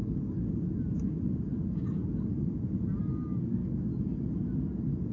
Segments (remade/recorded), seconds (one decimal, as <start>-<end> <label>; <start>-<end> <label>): 0.0-5.1 recorded